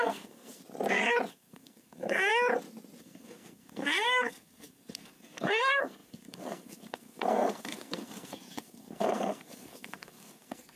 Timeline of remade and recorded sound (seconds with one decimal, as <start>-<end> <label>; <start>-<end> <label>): 0.0-0.6 remade; 0.6-1.3 recorded; 1.3-2.3 remade; 2.3-3.0 recorded; 3.0-10.8 remade